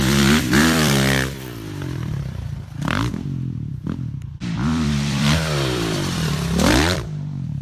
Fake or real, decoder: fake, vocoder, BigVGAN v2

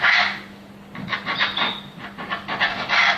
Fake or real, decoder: real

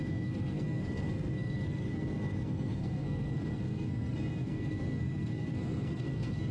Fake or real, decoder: fake, codec, SNAC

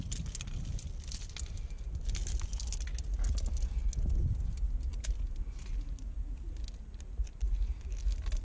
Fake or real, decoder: real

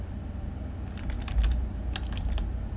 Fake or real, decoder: real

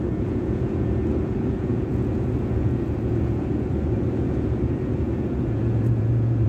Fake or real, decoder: fake, vocoder, Vocos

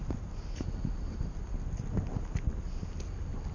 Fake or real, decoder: real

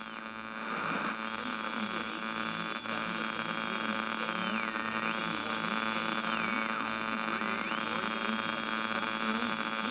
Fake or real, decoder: real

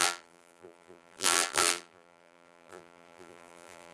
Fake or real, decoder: fake, vocoder, BigVGAN v2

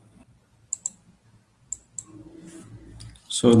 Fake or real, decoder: real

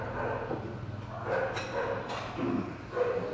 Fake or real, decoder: real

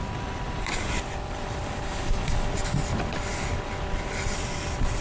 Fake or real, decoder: real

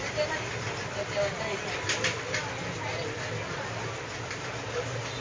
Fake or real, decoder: real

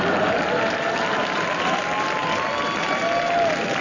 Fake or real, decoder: real